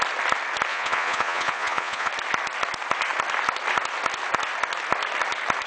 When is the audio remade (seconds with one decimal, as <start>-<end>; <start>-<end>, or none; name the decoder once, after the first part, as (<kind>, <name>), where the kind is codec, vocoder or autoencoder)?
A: 0.7-2.1 (vocoder, Vocos)